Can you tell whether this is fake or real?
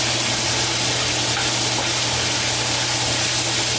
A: real